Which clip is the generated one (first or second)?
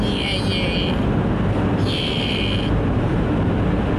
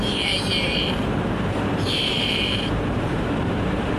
second